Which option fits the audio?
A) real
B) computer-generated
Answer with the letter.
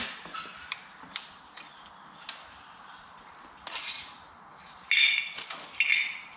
A